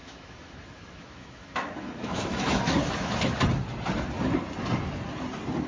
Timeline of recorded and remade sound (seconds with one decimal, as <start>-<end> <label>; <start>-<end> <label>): 0.0-3.4 remade; 3.4-5.7 recorded